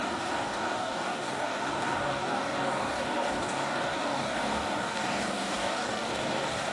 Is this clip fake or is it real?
fake